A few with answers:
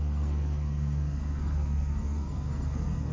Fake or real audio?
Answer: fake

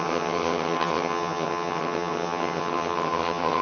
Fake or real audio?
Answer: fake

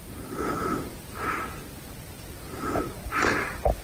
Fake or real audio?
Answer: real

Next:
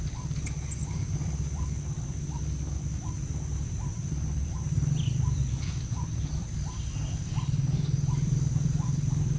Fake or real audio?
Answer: fake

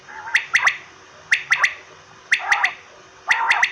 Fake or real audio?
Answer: real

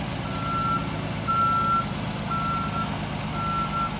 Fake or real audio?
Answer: real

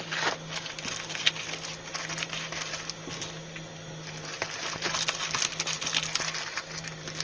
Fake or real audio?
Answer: real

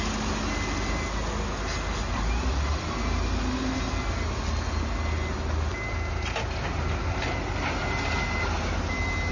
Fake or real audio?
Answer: real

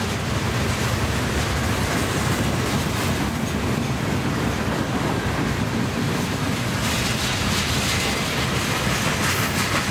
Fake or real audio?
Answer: fake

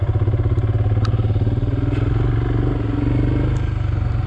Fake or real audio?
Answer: real